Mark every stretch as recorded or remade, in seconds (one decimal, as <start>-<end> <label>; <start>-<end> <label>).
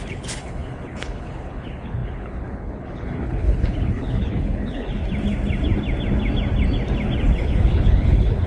0.0-5.0 remade; 5.0-7.4 recorded; 7.4-8.5 remade